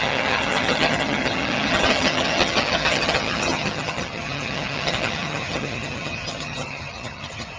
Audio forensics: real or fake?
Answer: fake